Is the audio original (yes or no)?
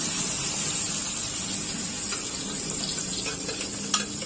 yes